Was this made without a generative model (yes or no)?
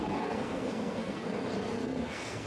no